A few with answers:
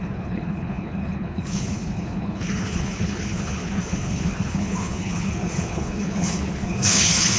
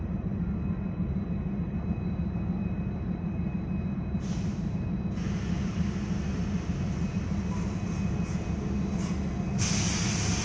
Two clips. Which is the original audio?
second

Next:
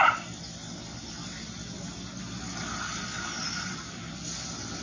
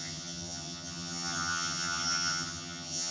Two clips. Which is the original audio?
first